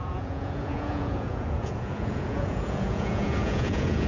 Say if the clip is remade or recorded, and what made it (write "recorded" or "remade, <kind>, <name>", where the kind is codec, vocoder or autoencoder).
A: remade, vocoder, Vocos